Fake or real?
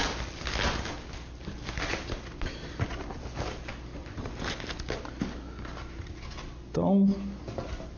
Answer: real